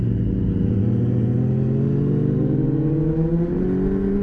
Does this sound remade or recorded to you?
recorded